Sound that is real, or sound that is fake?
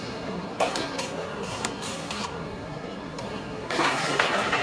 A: fake